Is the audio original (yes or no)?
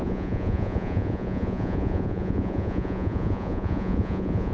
no